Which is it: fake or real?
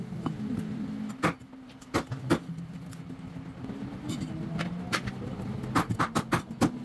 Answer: real